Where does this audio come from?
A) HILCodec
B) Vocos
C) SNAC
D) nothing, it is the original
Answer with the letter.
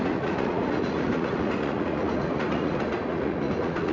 B